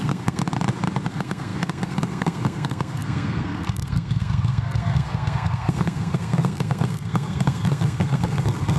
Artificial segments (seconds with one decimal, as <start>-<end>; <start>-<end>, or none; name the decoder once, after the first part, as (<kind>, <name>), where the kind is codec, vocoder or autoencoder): 0.0-0.4 (codec, SNAC); 1.1-8.8